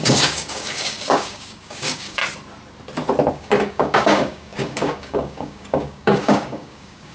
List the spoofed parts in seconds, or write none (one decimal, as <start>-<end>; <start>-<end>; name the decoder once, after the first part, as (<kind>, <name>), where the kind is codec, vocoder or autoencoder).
0.0-2.2 (codec, DAC); 3.3-7.1